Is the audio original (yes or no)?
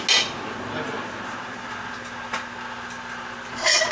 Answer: yes